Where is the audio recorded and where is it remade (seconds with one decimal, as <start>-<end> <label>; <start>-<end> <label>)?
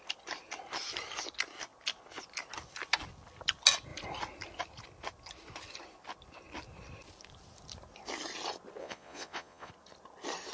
0.0-8.8 recorded; 8.8-9.7 remade; 9.7-10.5 recorded